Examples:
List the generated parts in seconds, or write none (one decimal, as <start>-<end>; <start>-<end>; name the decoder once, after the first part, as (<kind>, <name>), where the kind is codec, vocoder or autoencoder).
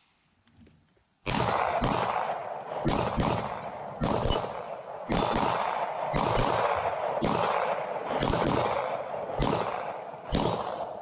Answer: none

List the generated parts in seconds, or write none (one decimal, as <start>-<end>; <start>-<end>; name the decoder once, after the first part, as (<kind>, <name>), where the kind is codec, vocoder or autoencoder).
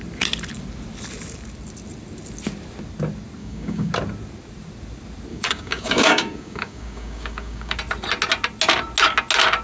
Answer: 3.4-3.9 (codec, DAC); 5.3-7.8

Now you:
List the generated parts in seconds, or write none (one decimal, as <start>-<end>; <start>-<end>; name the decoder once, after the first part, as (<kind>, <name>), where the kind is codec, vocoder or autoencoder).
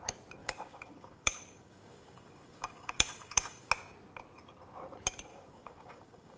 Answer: 0.4-3.7 (codec, DAC); 5.3-6.4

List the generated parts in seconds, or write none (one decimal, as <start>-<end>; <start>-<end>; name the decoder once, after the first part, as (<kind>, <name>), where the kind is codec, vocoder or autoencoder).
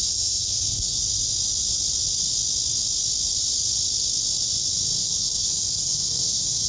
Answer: 0.0-1.0 (codec, SNAC); 5.0-6.7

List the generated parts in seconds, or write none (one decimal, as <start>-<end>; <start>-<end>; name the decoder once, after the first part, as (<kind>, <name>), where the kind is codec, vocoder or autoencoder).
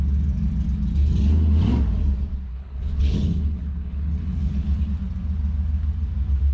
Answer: 2.5-4.8 (codec, HILCodec)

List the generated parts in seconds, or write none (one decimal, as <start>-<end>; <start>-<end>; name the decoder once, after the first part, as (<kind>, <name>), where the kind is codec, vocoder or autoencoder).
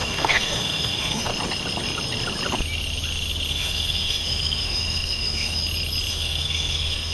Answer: 0.0-1.3 (autoencoder, DAC-VAE); 3.5-5.6; 6.1-7.1